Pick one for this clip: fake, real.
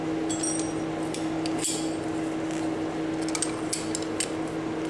real